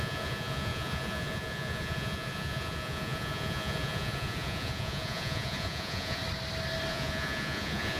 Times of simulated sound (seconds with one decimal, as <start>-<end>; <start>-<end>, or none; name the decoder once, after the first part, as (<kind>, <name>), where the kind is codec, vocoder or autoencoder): 0.0-6.2 (vocoder, Vocos); 6.9-8.0